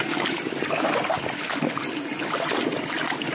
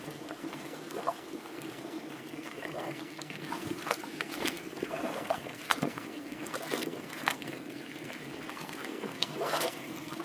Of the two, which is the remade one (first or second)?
second